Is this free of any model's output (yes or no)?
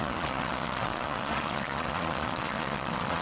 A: no